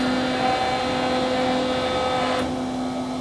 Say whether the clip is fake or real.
real